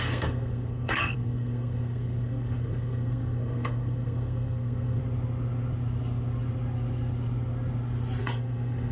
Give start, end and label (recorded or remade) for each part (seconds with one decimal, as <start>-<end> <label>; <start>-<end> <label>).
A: 0.0-5.0 remade; 5.0-8.2 recorded; 8.2-8.9 remade